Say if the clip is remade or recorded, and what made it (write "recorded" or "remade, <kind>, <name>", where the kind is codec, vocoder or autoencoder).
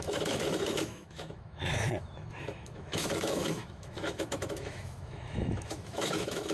remade, autoencoder, DAC-VAE